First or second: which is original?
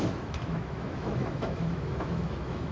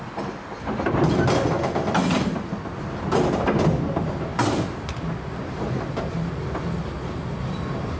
second